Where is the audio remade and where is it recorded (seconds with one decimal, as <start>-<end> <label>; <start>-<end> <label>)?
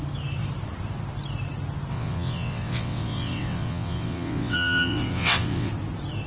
0.0-1.9 recorded; 1.9-5.7 remade; 5.7-6.3 recorded